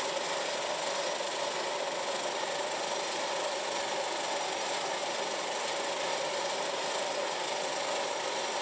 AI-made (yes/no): no